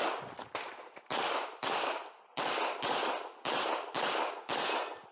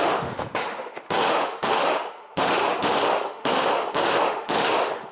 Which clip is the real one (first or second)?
first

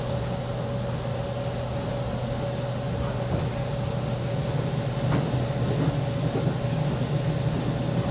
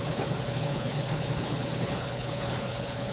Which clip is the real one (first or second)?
first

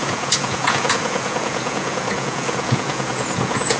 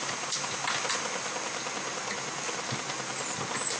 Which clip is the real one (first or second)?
second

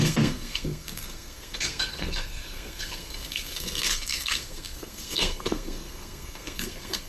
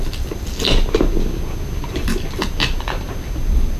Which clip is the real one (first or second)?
second